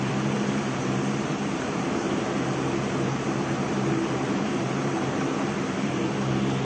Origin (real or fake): fake